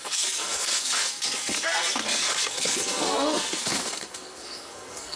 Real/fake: fake